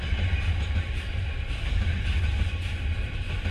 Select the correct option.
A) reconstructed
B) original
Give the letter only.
B